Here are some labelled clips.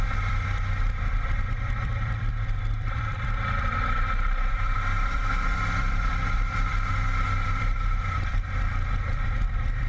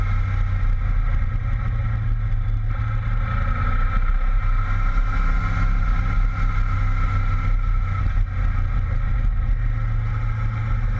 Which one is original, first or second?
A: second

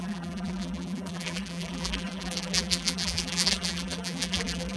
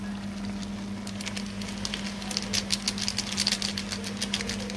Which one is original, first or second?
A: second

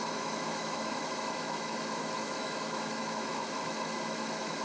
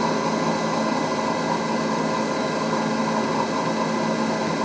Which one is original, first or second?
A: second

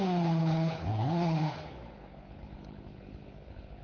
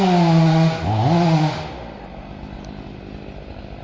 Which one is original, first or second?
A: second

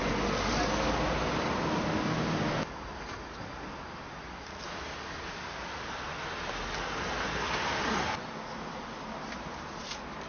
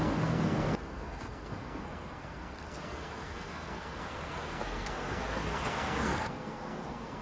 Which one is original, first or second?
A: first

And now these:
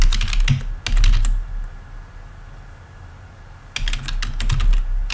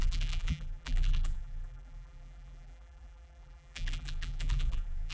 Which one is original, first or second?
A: first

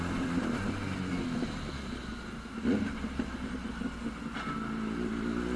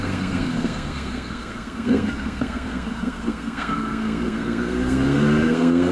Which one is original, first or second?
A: first